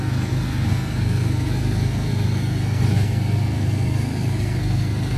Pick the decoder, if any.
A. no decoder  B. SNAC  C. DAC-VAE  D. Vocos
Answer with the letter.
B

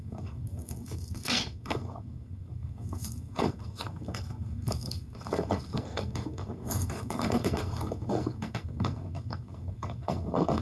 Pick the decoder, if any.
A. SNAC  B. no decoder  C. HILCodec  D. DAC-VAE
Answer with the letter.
A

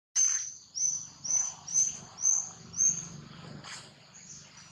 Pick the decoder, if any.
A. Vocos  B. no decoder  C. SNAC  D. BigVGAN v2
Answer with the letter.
B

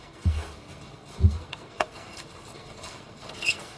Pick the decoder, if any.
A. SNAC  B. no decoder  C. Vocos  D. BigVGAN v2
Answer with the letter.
A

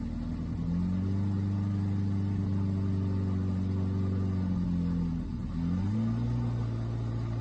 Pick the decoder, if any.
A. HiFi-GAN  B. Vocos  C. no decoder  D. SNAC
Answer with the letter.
C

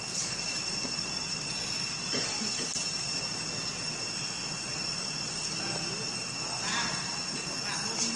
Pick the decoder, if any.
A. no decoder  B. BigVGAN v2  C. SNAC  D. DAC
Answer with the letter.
A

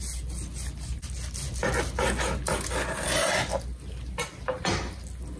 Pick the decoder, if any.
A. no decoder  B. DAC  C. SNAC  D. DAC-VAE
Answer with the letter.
A